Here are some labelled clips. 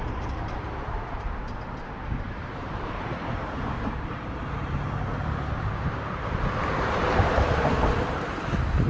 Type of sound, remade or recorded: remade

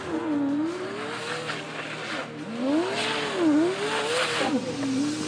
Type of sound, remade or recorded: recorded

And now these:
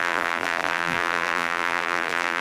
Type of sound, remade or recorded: remade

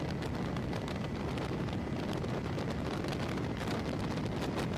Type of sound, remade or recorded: remade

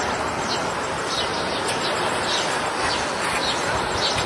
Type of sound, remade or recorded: recorded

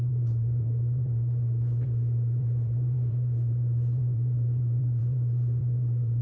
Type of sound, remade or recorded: remade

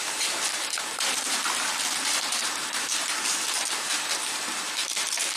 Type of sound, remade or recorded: remade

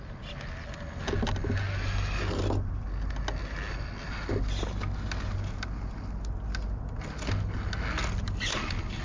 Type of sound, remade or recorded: recorded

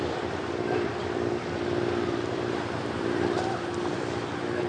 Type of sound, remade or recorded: remade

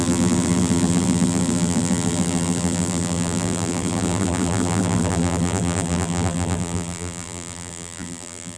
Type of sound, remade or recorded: remade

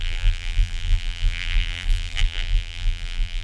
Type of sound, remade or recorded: remade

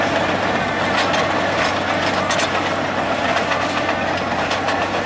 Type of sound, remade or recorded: recorded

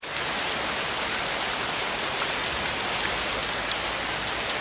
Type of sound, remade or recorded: recorded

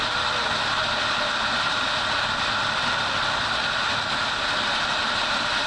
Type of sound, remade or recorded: recorded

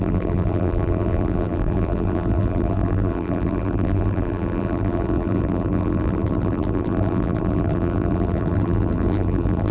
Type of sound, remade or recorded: remade